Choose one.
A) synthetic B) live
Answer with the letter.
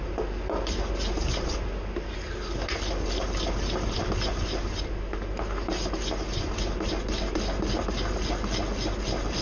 B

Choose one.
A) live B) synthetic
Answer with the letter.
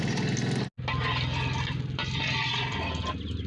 A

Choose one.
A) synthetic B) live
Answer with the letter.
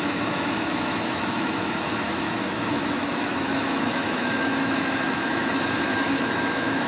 A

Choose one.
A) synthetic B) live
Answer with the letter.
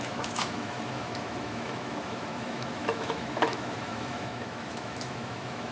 A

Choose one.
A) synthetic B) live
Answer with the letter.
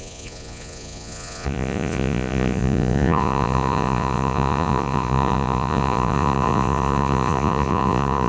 A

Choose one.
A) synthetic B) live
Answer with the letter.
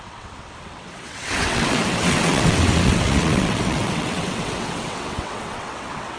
A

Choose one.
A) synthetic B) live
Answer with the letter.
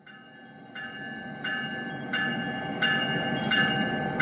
B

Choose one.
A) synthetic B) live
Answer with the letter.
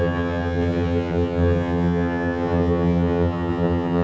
A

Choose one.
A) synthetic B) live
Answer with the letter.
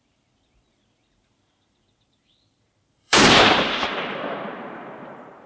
A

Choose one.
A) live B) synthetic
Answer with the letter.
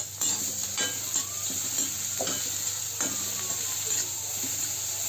A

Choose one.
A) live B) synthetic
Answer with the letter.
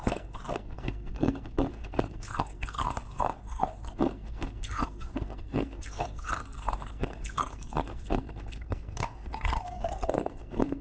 B